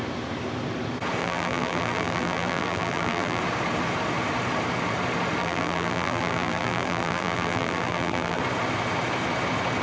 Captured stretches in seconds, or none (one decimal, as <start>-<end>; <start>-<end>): 0.0-1.2; 3.4-5.4; 8.4-9.8